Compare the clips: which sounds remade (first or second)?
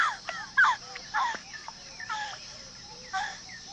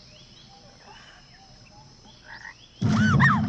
first